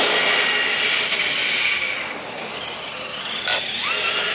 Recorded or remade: recorded